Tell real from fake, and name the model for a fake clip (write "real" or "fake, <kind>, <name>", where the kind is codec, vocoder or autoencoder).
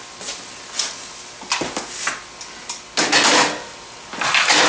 real